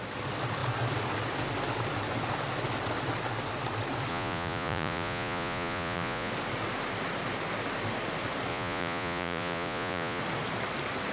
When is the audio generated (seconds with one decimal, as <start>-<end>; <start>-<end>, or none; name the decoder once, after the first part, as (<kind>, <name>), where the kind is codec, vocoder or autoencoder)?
4.1-6.3 (vocoder, Vocos); 8.5-10.2

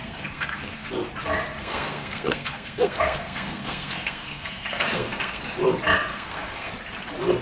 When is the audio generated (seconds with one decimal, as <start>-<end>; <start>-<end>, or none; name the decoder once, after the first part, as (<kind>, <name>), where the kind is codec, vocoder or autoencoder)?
0.0-0.9 (codec, SNAC); 1.6-5.4; 6.1-6.7

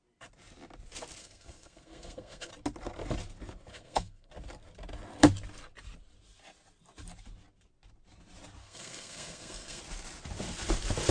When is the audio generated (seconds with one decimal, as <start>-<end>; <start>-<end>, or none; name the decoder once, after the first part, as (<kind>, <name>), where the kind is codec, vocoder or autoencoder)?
1.2-2.5 (codec, SNAC); 3.7-4.3; 8.6-9.8

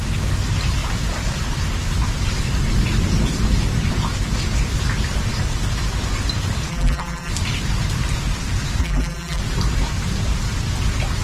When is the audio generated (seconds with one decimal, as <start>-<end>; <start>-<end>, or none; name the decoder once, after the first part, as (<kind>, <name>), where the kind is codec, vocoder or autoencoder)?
6.7-7.3 (vocoder, BigVGAN v2); 8.8-9.4

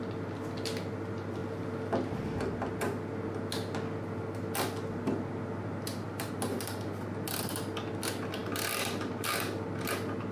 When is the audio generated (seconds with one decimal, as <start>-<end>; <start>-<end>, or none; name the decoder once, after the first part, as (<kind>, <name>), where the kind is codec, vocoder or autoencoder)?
none

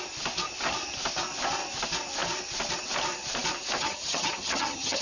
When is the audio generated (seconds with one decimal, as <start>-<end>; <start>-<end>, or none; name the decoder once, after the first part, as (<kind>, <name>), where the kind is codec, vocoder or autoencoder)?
3.8-5.0 (vocoder, HiFi-GAN)